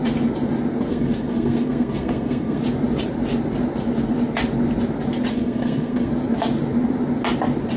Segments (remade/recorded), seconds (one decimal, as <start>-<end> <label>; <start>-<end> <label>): 0.0-0.9 recorded; 0.9-2.6 remade; 2.6-5.3 recorded; 5.3-6.1 remade; 6.1-7.8 recorded